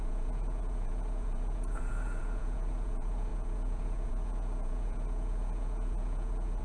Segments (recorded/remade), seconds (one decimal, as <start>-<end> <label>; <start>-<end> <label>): 0.0-6.6 remade